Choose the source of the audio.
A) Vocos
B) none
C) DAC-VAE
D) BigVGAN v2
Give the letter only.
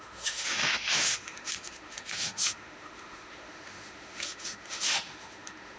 C